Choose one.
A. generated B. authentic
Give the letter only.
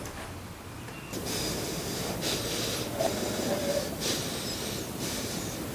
B